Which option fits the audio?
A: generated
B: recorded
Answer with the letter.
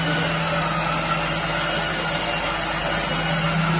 B